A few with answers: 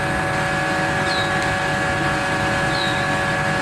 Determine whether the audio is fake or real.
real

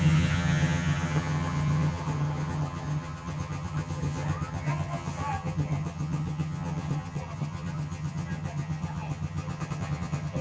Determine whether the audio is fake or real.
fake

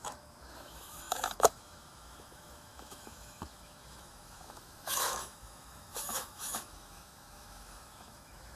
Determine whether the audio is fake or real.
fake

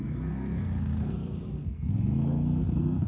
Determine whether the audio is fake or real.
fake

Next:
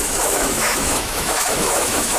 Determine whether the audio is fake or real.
fake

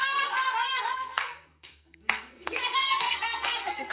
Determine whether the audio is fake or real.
fake